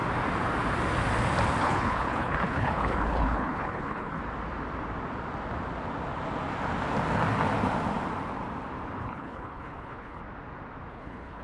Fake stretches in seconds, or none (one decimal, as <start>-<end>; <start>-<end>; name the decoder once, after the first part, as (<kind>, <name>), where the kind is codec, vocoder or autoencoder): 1.6-4.2 (codec, HILCodec); 9.0-10.2; 10.9-11.4